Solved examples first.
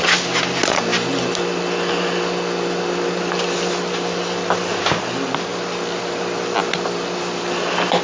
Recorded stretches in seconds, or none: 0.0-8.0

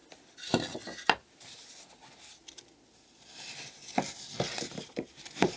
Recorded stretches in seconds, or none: 0.0-4.5

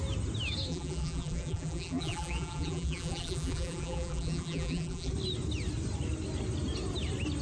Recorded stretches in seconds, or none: 0.0-0.7; 5.1-7.4

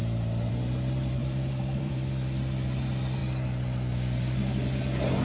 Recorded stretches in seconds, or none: 0.0-1.2; 1.9-5.2

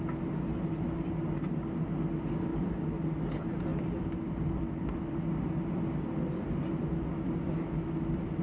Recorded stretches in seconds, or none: 0.0-2.5; 3.0-8.4

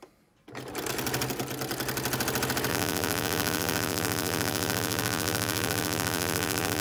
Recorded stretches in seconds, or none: 0.0-2.7